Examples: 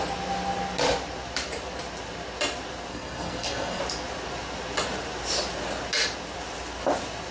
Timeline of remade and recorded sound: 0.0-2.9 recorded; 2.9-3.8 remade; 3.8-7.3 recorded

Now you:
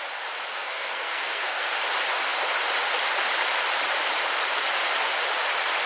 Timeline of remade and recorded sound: 0.0-0.5 recorded; 0.5-1.7 remade; 1.7-5.9 recorded

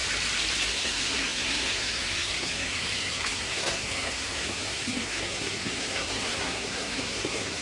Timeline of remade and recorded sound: 0.0-0.7 recorded; 0.7-7.6 remade

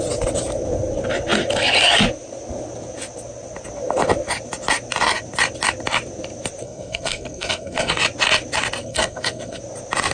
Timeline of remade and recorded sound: 0.0-6.6 recorded; 6.6-7.9 remade; 7.9-8.8 recorded; 8.8-9.6 remade; 9.6-10.1 recorded

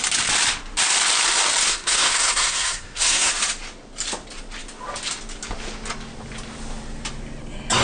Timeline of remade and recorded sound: 0.0-1.7 recorded; 1.7-3.3 remade; 3.3-7.8 recorded

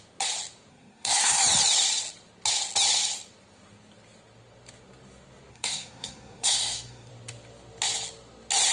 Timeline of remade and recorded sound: 0.0-0.7 recorded; 0.7-1.4 remade; 1.4-5.5 recorded; 5.5-7.1 remade; 7.1-8.7 recorded

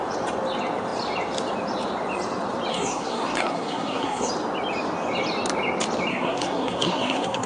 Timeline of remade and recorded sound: 0.0-2.7 recorded; 2.7-4.3 remade; 4.3-6.1 recorded; 6.1-7.5 remade

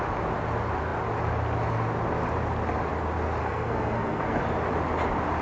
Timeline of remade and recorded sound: 0.0-3.4 recorded; 3.4-4.4 remade; 4.4-5.4 recorded